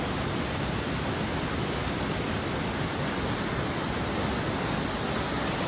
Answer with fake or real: real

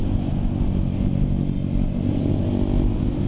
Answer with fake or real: real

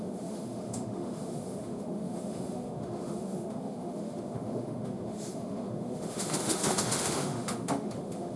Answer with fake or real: fake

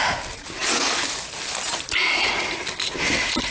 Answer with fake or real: real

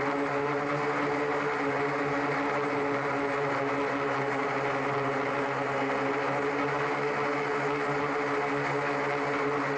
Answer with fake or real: real